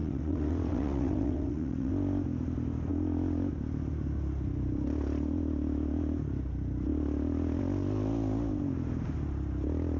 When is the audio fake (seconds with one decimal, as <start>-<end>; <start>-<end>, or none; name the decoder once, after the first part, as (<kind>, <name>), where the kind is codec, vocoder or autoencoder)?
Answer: 0.0-1.9 (vocoder, WaveNeXt)